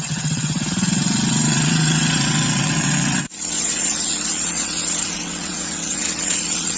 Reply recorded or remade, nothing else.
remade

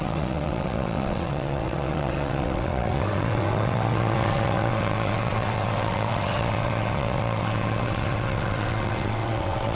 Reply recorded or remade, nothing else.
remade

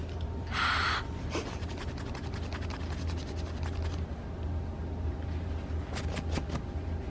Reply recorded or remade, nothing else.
recorded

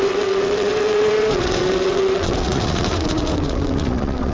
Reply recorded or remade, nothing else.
remade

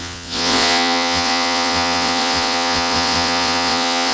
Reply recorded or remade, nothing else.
remade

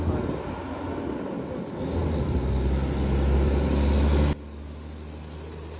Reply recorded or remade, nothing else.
recorded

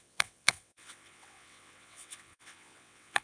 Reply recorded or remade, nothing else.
remade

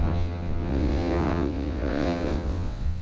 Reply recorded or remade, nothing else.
remade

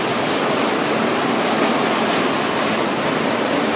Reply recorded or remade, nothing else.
recorded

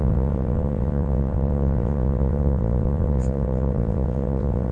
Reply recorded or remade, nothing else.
remade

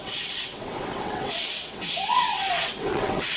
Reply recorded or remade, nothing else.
remade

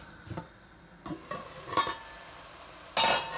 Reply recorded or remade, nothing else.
recorded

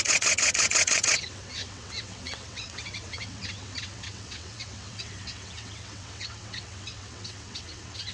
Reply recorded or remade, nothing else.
remade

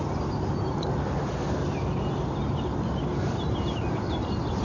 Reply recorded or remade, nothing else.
recorded